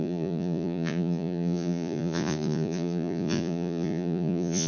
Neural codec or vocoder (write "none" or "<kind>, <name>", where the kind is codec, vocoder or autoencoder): vocoder, Vocos